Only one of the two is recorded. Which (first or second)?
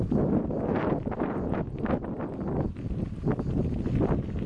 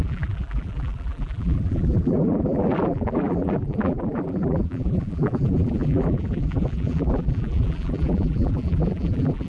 first